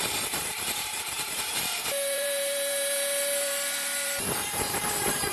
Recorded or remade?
remade